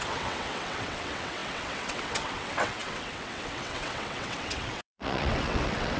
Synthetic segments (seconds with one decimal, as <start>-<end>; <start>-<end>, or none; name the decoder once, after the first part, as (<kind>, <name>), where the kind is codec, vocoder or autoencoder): 0.0-6.0 (vocoder, WaveNeXt)